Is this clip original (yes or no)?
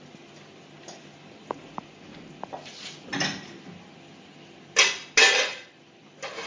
yes